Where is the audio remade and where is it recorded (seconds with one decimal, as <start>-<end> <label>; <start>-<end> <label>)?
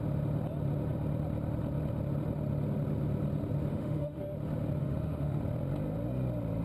0.0-3.7 recorded; 3.7-4.2 remade; 4.2-4.8 recorded; 4.8-5.4 remade; 5.4-6.6 recorded